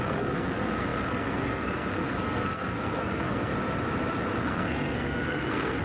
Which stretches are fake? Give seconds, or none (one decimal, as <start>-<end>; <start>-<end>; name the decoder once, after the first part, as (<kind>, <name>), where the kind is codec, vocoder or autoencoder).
0.0-3.5 (codec, SNAC); 4.4-5.8